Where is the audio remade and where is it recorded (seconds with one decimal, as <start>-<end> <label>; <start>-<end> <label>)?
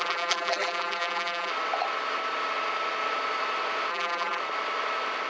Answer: 0.0-1.5 remade; 1.5-3.9 recorded; 3.9-4.4 remade; 4.4-5.3 recorded